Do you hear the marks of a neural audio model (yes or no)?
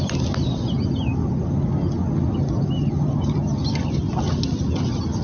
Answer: no